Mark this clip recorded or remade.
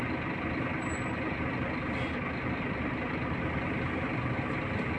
recorded